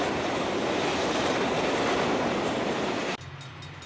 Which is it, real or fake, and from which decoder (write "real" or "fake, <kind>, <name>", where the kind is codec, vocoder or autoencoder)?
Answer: fake, vocoder, BigVGAN v2